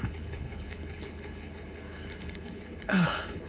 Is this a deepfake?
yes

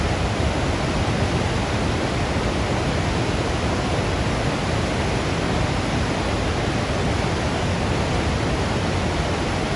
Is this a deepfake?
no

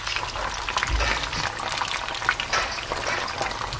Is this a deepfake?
no